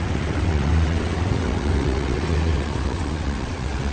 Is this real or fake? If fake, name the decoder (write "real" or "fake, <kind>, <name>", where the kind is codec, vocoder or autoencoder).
fake, vocoder, WaveNeXt